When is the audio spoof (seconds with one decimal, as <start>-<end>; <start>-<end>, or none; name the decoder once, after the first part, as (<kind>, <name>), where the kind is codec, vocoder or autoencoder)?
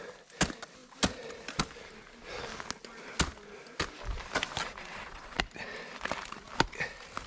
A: 4.9-5.4 (vocoder, WaveNeXt)